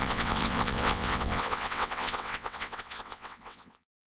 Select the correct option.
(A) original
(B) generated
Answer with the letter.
B